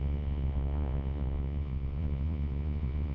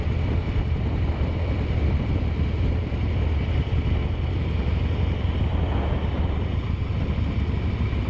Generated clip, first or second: first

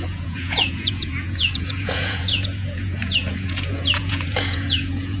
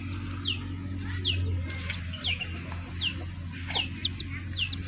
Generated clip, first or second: first